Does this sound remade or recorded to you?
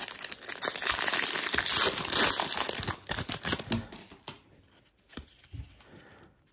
recorded